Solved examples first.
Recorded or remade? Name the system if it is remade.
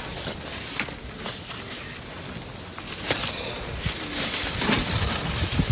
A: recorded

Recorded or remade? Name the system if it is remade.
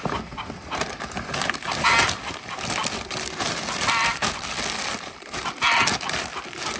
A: recorded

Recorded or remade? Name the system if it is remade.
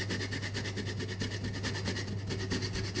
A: recorded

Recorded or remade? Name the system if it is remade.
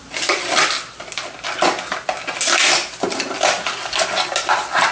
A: recorded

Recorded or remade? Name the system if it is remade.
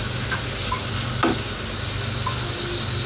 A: recorded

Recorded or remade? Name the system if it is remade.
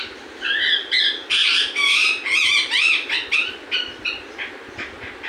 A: recorded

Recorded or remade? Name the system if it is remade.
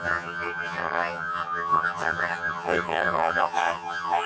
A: remade, vocoder, HiFi-GAN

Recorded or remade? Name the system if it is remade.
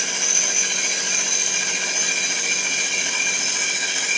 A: recorded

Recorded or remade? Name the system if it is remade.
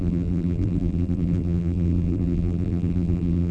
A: remade, vocoder, BigVGAN v2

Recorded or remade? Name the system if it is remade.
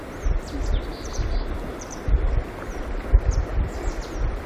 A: recorded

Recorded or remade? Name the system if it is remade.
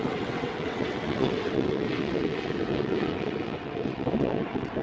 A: remade, vocoder, WaveNeXt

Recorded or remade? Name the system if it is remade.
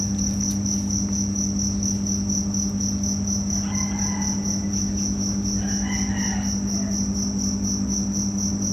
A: recorded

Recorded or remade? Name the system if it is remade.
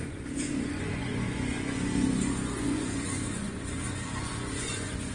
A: remade, vocoder, Vocos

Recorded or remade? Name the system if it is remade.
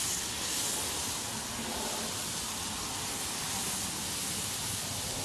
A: recorded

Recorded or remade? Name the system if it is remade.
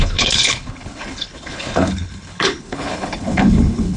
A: remade, codec, HILCodec